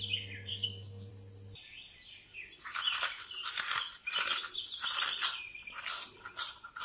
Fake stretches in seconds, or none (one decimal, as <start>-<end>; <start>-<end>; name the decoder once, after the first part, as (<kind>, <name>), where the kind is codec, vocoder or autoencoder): 0.5-1.1 (codec, SNAC)